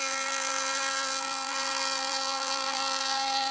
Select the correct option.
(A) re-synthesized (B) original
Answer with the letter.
A